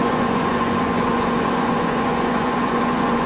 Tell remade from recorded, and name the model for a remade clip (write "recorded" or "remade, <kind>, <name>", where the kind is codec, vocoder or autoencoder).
remade, vocoder, Vocos